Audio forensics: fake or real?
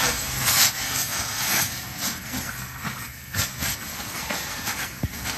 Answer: fake